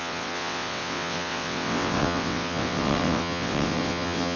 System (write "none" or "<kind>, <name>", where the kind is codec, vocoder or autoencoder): vocoder, WaveNeXt